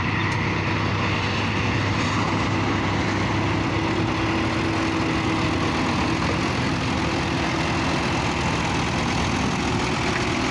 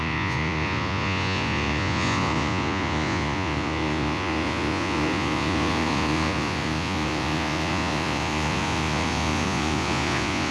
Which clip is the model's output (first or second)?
second